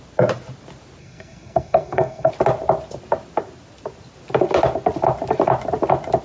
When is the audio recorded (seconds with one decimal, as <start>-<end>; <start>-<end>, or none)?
0.0-1.0; 2.3-6.2